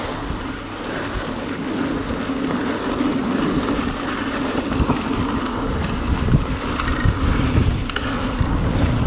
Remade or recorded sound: recorded